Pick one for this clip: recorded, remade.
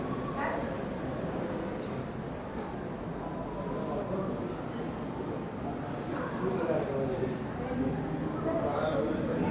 recorded